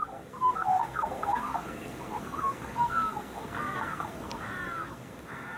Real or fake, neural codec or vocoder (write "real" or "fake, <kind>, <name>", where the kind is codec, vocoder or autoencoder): fake, codec, SNAC